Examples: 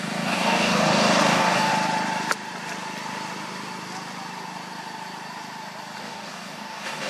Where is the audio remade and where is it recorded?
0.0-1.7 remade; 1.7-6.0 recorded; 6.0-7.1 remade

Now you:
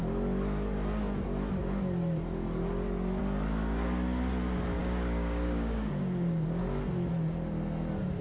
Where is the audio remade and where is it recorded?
0.0-4.8 recorded; 4.8-6.6 remade; 6.6-8.2 recorded

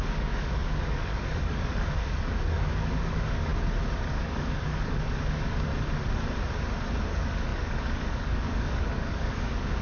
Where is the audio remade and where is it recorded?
0.0-3.5 remade; 3.5-4.1 recorded; 4.1-5.7 remade; 5.7-7.0 recorded; 7.0-9.8 remade